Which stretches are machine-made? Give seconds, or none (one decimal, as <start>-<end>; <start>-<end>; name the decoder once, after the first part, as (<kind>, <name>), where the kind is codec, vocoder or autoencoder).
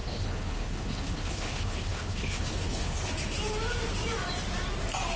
0.0-3.1 (codec, HILCodec)